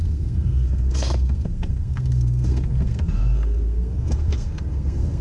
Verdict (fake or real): fake